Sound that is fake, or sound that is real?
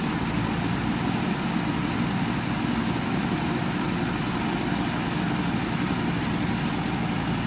real